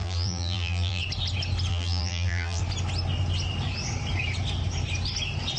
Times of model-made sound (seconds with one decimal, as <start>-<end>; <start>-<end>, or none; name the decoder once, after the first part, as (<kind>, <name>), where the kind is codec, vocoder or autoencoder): 0.0-1.0 (vocoder, BigVGAN v2); 1.7-2.6